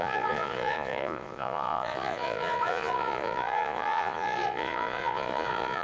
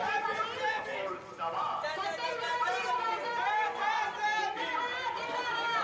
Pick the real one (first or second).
second